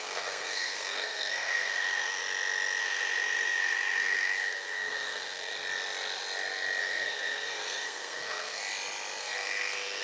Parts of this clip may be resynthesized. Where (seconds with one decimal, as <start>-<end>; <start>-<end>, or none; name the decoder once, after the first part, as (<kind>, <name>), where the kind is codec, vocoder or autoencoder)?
0.0-2.2 (codec, SNAC); 2.8-5.5; 6.8-8.6; 9.2-10.0